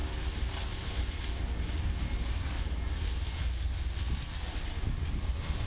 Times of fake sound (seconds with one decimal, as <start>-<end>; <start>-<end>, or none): none

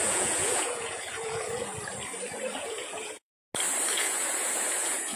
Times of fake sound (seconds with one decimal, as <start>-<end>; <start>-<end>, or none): 0.0-1.7; 2.5-3.3; 3.9-5.2

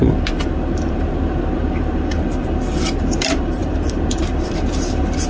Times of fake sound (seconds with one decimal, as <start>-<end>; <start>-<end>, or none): 0.5-5.3

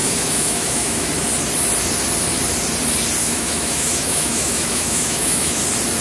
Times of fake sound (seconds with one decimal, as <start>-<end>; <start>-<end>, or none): 0.0-1.1; 3.2-5.6

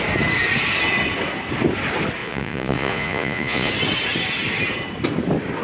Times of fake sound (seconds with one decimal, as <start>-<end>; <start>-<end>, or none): 2.2-3.7

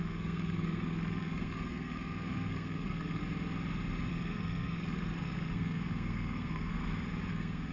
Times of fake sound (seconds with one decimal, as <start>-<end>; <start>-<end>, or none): 0.0-3.2; 4.1-6.8; 7.3-7.7

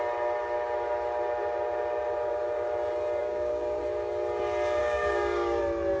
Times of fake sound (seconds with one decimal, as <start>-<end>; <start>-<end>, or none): 3.2-3.8; 4.8-5.6

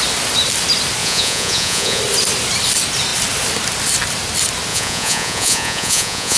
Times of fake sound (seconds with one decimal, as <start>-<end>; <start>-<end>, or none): 1.0-2.0; 4.7-6.4